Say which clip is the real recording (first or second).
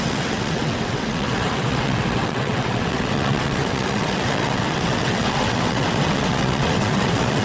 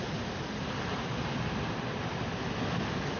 second